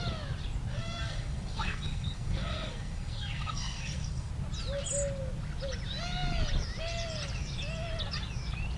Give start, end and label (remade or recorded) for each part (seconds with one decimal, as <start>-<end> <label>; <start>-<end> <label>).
0.0-0.7 recorded; 0.7-4.3 remade; 4.3-8.8 recorded